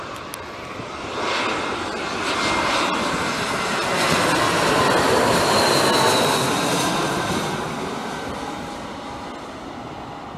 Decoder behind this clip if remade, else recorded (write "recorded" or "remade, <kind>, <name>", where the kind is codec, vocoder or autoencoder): recorded